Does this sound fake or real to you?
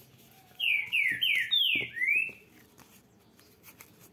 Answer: real